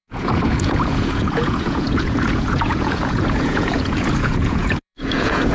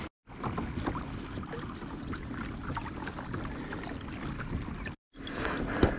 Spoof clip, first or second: first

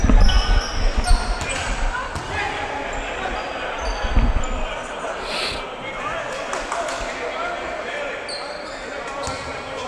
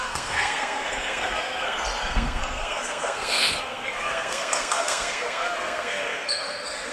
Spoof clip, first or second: second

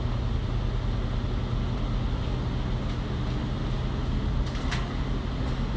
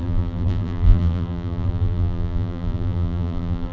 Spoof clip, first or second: second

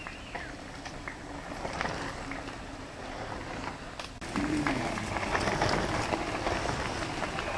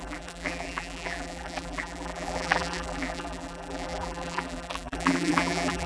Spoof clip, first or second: second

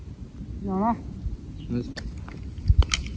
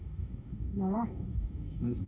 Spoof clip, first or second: second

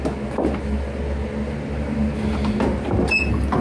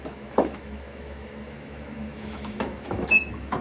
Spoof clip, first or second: second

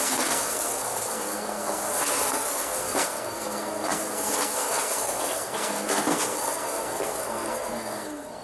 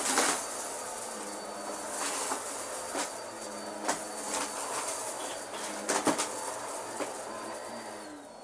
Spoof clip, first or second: first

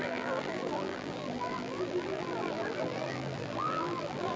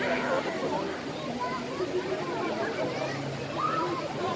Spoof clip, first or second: first